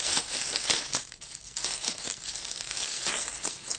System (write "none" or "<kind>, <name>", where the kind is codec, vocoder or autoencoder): codec, SNAC